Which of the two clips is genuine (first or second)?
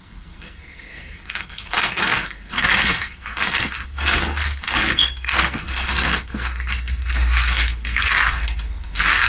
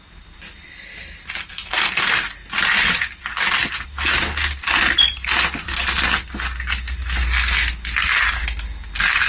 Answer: second